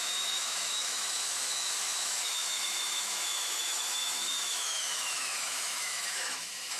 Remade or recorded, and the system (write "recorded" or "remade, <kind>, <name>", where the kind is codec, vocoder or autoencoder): remade, autoencoder, DAC-VAE